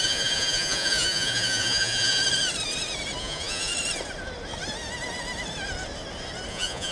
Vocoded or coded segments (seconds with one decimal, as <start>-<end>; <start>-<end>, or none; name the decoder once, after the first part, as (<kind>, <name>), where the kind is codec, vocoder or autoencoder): 0.0-2.2 (vocoder, Vocos); 3.2-3.7; 6.5-6.9